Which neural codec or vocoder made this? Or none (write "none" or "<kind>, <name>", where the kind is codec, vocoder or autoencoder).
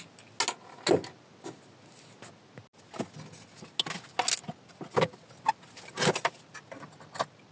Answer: none